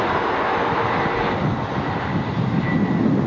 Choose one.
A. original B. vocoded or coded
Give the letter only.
A